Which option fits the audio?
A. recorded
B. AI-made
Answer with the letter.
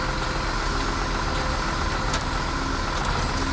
A